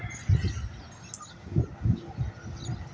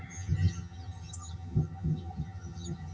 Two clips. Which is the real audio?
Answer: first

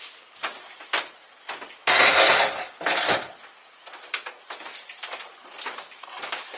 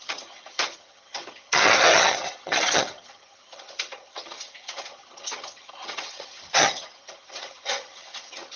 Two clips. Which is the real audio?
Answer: first